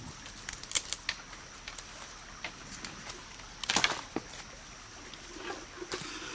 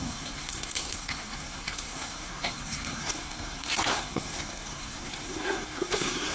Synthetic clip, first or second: second